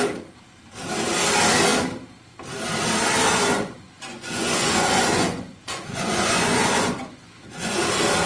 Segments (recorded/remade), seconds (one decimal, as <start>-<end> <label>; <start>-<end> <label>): 0.0-3.3 recorded; 3.3-7.8 remade; 7.8-8.3 recorded